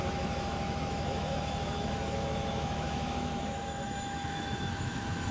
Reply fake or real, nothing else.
fake